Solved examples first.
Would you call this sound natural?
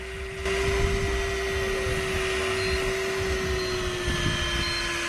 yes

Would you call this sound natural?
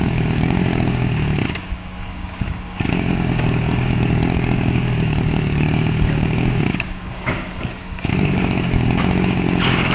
no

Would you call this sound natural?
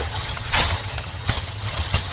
no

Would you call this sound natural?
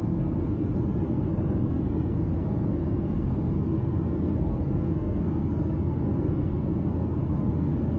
no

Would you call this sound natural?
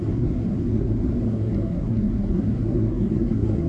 no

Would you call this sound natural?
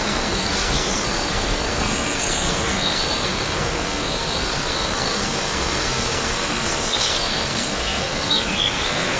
no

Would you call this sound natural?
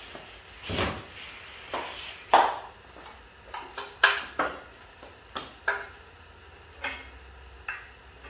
yes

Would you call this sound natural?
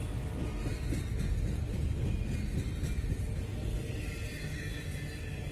yes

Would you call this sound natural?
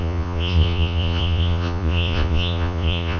no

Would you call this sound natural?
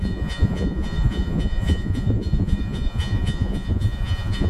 no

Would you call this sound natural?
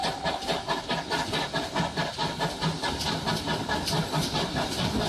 yes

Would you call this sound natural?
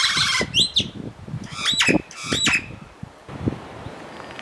no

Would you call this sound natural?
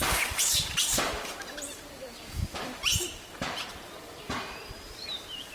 no